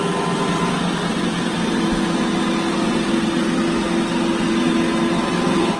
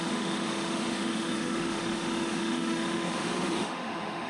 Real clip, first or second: first